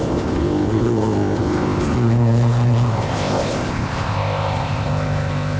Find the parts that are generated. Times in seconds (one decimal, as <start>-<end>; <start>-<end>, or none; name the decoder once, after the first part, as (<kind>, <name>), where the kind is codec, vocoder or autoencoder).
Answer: 0.0-5.6 (codec, ZipCodec)